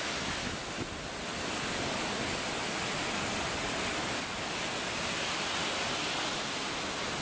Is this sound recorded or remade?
recorded